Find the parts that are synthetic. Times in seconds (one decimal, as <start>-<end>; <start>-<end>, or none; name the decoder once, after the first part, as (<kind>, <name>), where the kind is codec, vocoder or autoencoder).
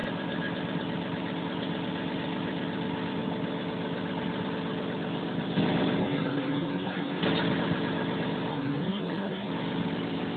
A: 6.0-7.2 (codec, SNAC); 8.5-9.5